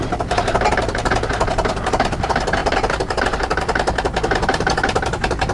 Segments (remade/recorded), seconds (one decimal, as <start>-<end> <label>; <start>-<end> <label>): 0.0-5.5 recorded